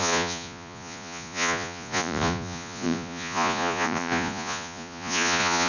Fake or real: fake